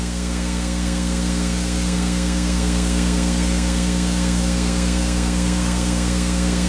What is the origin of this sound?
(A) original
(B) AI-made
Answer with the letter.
B